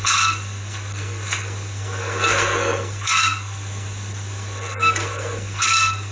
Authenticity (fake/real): fake